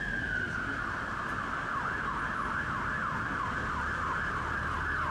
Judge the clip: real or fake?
real